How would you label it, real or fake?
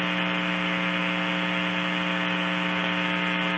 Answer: real